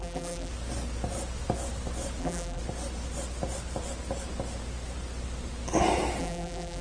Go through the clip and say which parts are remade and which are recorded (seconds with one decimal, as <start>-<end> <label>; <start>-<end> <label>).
0.0-0.5 remade; 0.5-2.2 recorded; 2.2-2.6 remade; 2.6-6.2 recorded; 6.2-6.8 remade